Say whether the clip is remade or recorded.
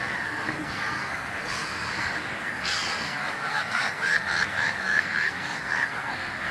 remade